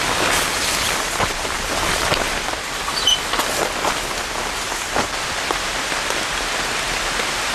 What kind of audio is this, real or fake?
real